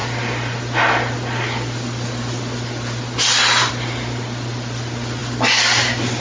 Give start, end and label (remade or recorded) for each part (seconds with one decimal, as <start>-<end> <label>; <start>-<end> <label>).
0.0-6.2 recorded